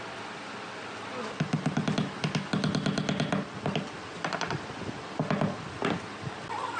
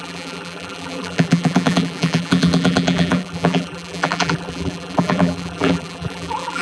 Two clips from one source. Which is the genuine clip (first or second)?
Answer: first